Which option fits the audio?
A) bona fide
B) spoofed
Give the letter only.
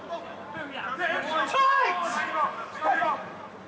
A